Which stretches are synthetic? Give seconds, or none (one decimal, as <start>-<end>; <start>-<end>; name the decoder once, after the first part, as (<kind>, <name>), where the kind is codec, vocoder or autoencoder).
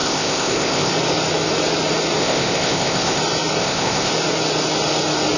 0.0-0.9 (codec, ZipCodec); 2.2-3.2; 3.6-4.1